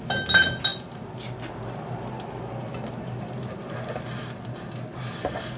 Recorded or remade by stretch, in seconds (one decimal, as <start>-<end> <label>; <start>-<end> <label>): 0.0-5.6 recorded